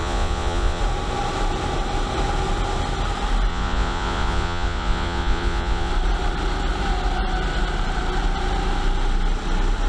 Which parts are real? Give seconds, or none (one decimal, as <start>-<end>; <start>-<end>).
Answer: 0.8-3.5; 5.9-9.9